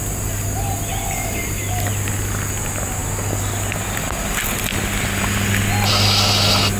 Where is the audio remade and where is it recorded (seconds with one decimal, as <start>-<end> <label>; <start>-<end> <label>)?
0.0-6.8 recorded